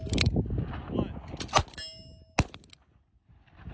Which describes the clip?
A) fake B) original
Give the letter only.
B